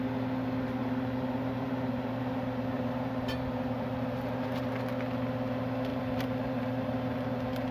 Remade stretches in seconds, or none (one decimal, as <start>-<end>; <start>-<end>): 0.8-4.7; 5.9-7.7